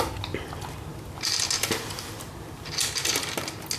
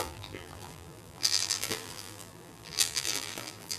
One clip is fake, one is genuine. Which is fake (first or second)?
second